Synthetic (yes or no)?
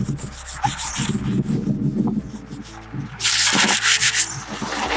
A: no